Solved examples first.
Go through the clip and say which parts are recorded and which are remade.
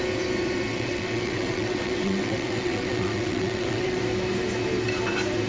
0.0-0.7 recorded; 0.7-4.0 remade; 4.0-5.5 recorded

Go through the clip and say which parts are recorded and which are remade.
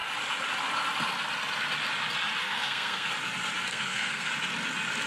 0.0-2.4 recorded; 2.4-3.1 remade; 3.1-3.7 recorded; 3.7-4.3 remade; 4.3-5.1 recorded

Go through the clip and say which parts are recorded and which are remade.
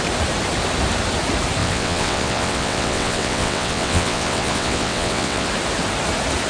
0.0-1.6 recorded; 1.6-5.5 remade; 5.5-6.5 recorded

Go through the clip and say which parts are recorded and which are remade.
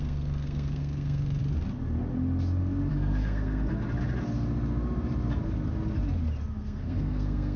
0.0-1.4 remade; 1.4-2.9 recorded; 2.9-3.7 remade; 3.7-6.5 recorded; 6.5-7.6 remade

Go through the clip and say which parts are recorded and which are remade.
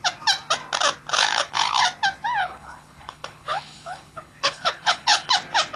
0.0-1.1 recorded; 1.1-1.8 remade; 1.8-2.4 recorded; 2.4-5.3 remade; 5.3-5.8 recorded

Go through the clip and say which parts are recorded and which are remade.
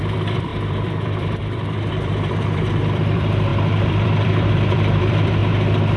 0.0-5.4 remade; 5.4-6.0 recorded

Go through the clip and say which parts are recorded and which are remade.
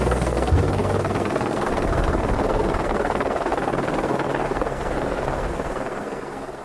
0.0-6.6 remade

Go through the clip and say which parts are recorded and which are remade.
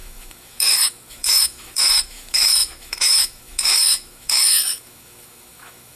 0.0-6.0 remade